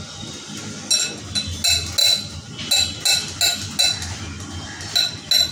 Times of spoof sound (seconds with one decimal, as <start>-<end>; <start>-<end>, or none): none